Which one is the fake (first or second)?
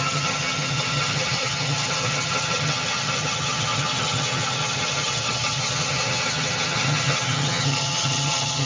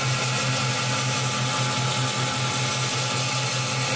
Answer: first